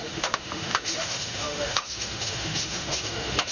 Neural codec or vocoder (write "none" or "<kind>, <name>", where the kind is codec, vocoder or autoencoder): autoencoder, DAC-VAE